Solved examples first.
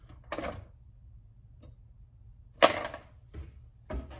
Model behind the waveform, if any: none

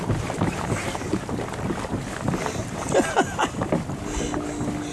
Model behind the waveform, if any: none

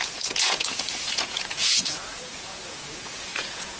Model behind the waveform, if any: vocoder, Vocos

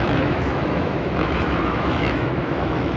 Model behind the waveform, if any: autoencoder, DAC-VAE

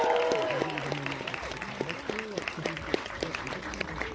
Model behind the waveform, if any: vocoder, BigVGAN v2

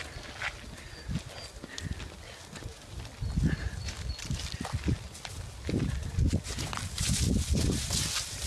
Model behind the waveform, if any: none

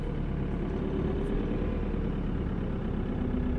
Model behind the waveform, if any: none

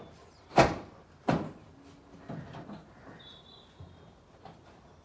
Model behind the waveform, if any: none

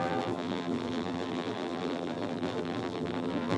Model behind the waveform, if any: vocoder, BigVGAN v2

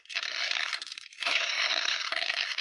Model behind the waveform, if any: codec, SNAC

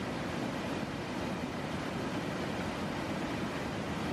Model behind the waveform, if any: none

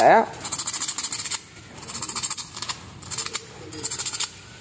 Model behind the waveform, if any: none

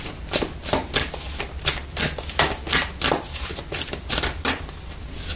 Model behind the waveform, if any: none